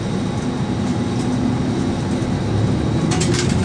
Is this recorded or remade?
recorded